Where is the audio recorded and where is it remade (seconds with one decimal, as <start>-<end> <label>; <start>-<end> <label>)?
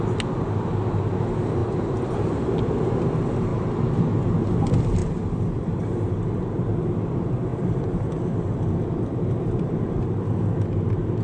0.0-1.6 recorded; 1.6-2.6 remade; 2.6-5.0 recorded; 5.0-5.8 remade; 5.8-7.5 recorded; 7.5-10.1 remade; 10.1-11.2 recorded